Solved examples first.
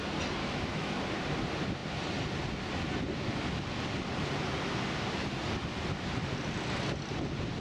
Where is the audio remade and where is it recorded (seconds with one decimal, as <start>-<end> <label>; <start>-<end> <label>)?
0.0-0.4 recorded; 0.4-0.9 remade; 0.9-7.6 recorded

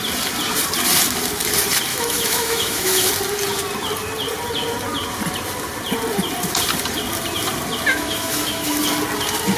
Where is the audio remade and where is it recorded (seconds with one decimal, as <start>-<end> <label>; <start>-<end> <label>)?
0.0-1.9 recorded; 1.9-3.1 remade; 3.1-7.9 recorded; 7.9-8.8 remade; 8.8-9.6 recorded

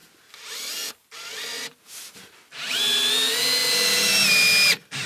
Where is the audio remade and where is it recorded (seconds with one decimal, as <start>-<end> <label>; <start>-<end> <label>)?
0.0-5.1 recorded

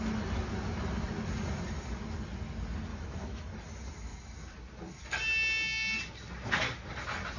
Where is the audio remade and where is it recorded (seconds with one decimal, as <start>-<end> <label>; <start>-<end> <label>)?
0.0-2.9 recorded; 2.9-3.6 remade; 3.6-7.4 recorded

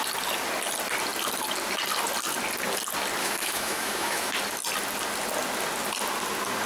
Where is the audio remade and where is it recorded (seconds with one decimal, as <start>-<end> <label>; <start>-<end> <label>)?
0.0-3.2 recorded; 3.2-4.3 remade; 4.3-6.7 recorded

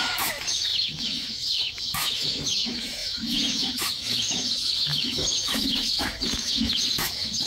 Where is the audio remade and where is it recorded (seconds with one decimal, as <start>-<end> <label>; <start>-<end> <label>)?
0.0-7.5 remade